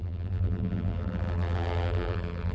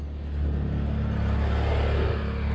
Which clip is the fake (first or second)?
first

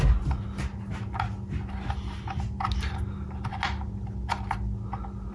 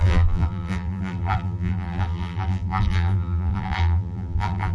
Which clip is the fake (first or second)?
second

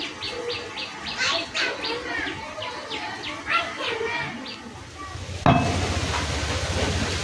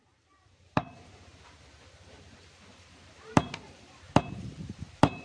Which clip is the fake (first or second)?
second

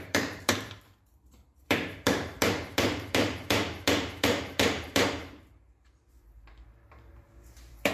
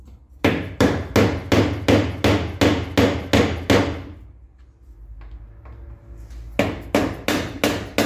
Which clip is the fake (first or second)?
first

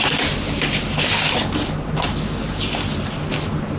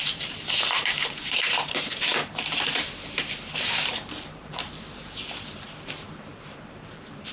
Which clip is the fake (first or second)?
second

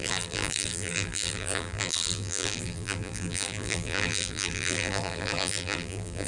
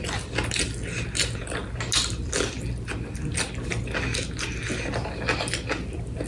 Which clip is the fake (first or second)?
first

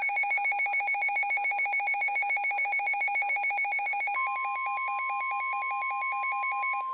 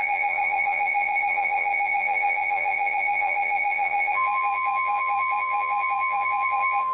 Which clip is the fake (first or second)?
second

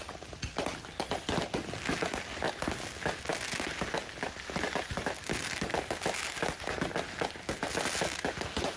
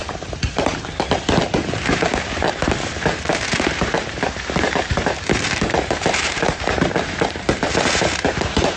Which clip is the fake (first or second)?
second